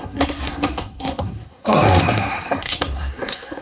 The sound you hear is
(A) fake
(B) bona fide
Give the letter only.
A